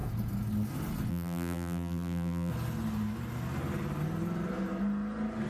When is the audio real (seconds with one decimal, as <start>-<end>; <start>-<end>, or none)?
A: 0.0-1.1; 2.5-5.5